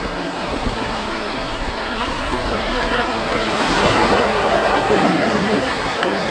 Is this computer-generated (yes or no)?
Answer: yes